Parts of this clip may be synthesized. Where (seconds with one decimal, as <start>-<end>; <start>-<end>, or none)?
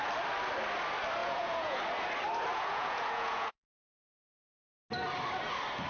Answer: 1.2-1.8; 2.5-4.8